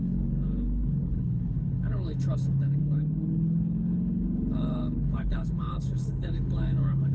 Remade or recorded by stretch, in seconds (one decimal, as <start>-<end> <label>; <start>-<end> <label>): 0.0-7.1 remade

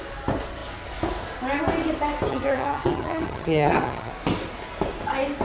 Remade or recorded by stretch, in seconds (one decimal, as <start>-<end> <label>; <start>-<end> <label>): 0.0-2.3 recorded; 2.3-4.1 remade; 4.1-5.4 recorded

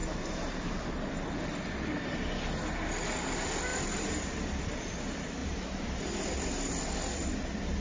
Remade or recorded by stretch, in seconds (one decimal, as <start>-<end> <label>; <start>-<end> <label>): 0.0-1.1 remade; 1.1-3.7 recorded; 3.7-4.3 remade; 4.3-5.4 recorded; 5.4-5.9 remade; 5.9-7.8 recorded

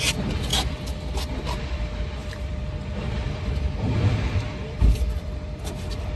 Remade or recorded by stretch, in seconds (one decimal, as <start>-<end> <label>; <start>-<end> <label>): 0.0-2.2 recorded; 2.2-6.2 remade

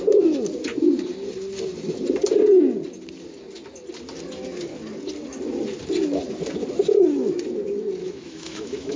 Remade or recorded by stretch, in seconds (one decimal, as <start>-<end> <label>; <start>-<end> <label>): 0.0-8.0 recorded; 8.0-9.0 remade